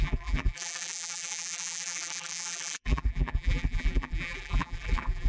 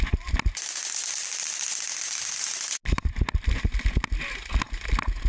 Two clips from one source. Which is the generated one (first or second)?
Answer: first